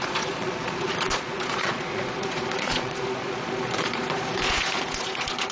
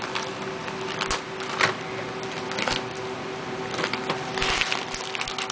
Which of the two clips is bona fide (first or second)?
second